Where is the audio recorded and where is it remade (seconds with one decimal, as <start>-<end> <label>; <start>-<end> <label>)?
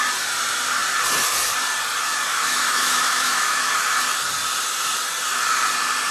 0.0-2.3 recorded; 2.3-3.7 remade; 3.7-6.1 recorded